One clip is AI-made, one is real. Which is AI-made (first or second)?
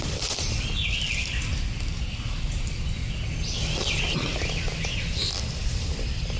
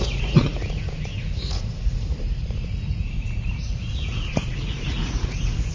second